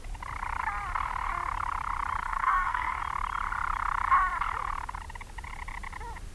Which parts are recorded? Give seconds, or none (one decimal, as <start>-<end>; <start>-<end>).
0.0-2.2; 3.0-6.3